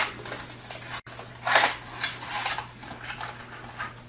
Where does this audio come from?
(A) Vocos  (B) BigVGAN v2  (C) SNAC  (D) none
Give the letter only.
D